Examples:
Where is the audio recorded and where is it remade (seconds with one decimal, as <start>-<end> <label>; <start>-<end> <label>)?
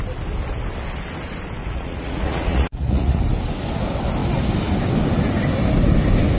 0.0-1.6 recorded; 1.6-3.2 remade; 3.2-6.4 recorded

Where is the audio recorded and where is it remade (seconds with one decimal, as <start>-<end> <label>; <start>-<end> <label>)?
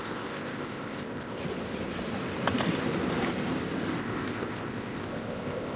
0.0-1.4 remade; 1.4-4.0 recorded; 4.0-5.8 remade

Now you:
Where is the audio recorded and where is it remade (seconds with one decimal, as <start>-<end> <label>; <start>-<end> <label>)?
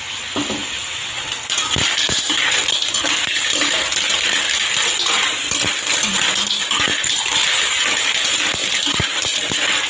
0.0-6.9 recorded; 6.9-7.8 remade; 7.8-8.6 recorded; 8.6-9.5 remade; 9.5-9.9 recorded